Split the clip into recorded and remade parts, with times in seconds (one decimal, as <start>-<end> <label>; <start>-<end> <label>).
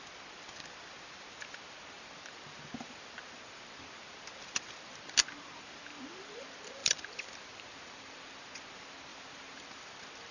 0.0-6.8 recorded; 6.8-8.4 remade; 8.4-9.1 recorded; 9.1-10.3 remade